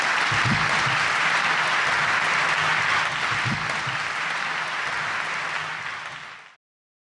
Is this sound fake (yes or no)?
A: no